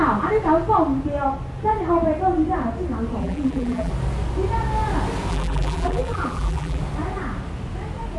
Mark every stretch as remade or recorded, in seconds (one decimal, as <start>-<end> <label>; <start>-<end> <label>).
0.0-3.2 recorded; 3.2-3.9 remade; 3.9-5.3 recorded; 5.3-6.8 remade; 6.8-8.2 recorded